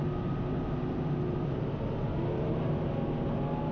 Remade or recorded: recorded